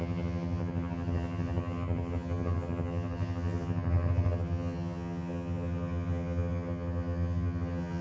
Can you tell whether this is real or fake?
fake